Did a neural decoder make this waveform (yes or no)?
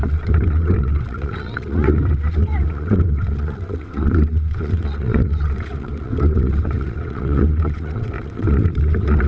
yes